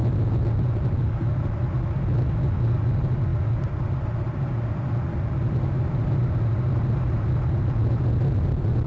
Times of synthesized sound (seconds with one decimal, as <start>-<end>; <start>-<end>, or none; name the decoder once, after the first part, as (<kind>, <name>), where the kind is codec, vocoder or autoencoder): none